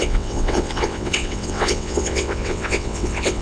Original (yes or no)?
no